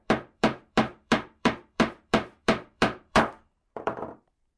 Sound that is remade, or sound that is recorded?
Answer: remade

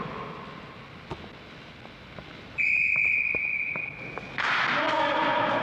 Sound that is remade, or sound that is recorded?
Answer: recorded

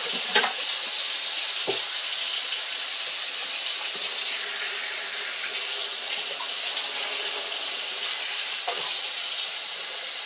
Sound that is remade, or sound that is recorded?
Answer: recorded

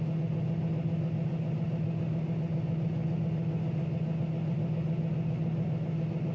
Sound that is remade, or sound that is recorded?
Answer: recorded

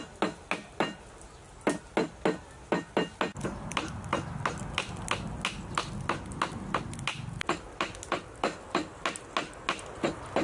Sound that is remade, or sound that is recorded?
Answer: recorded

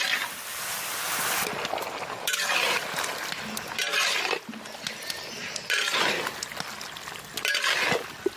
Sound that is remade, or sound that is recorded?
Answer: recorded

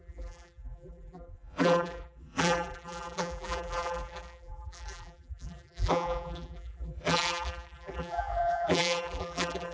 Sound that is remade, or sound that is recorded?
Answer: remade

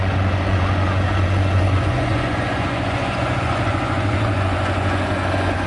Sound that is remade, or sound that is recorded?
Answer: remade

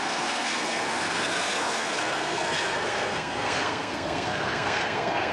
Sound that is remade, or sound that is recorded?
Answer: remade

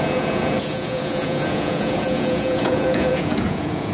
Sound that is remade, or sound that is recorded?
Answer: remade